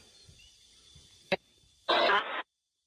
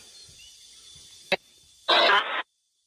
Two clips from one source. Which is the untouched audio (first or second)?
second